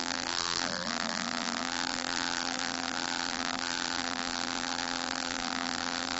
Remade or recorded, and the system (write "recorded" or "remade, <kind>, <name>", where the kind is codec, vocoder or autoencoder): remade, vocoder, BigVGAN v2